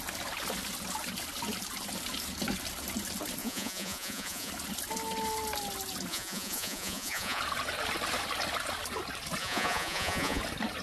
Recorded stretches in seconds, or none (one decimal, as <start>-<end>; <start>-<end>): 0.0-3.4; 4.5-6.1; 7.4-9.4; 10.4-10.8